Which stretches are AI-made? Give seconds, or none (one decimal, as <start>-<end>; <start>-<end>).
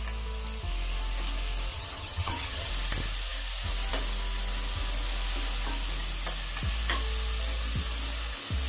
1.7-2.7